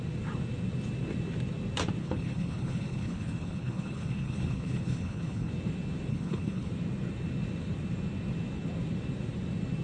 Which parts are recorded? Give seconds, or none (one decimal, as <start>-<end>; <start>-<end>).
0.0-2.0; 5.5-6.1; 6.7-9.8

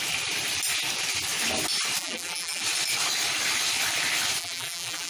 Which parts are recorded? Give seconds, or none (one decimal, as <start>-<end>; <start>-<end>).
0.0-2.0; 2.6-4.4

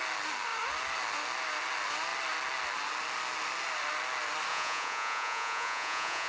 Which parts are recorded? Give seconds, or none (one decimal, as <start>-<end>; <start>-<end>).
0.0-4.5

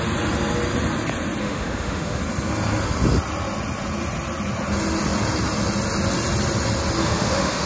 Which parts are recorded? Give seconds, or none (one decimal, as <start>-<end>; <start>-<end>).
0.0-1.4; 2.2-7.0

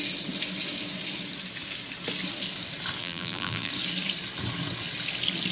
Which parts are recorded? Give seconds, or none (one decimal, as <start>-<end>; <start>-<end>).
0.0-3.0; 3.7-5.5